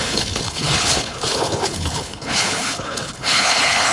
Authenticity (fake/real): fake